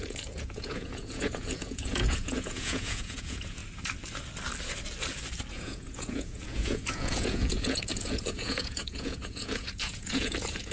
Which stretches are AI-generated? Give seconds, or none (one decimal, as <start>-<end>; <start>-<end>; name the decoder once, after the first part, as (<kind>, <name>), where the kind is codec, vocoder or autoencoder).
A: 0.0-3.6 (vocoder, Vocos); 5.5-10.7